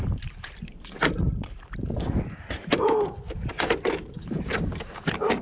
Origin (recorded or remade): remade